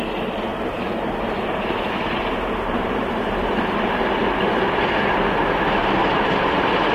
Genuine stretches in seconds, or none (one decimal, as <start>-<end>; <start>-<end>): 0.0-0.5; 4.6-5.8

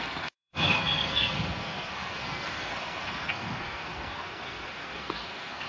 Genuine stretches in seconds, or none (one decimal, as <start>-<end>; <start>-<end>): none